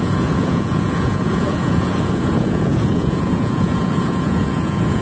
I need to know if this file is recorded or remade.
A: remade